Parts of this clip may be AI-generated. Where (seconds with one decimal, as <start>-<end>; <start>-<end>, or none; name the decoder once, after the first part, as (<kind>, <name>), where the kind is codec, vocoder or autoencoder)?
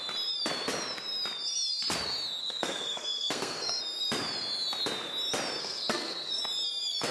2.4-3.8 (codec, SNAC); 5.6-6.4